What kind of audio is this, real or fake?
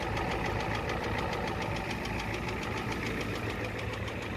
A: fake